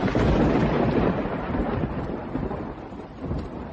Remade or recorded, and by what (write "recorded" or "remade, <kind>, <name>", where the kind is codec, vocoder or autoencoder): remade, vocoder, BigVGAN v2